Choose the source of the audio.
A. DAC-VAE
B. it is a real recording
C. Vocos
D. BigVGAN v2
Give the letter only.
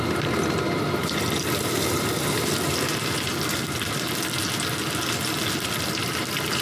B